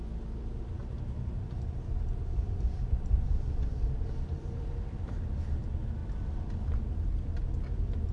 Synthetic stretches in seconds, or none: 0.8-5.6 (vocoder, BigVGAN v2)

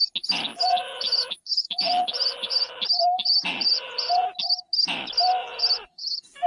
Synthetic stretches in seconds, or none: 0.5-4.4 (vocoder, BigVGAN v2); 5.4-6.5

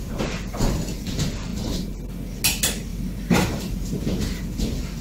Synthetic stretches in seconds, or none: 2.9-4.4 (vocoder, BigVGAN v2)

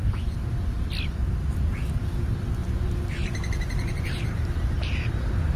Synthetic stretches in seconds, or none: 2.6-5.6 (vocoder, BigVGAN v2)